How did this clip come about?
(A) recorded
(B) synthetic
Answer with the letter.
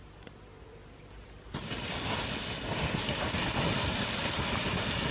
A